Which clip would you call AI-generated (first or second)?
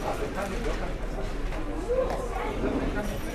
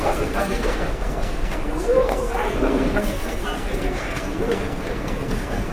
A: second